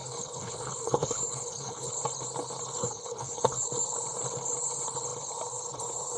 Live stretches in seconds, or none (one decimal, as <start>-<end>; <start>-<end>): 1.9-2.8; 3.7-6.2